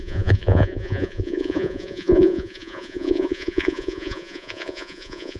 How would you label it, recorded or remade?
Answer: remade